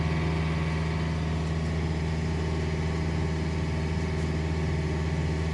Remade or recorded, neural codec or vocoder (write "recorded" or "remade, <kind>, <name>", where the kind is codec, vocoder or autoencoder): recorded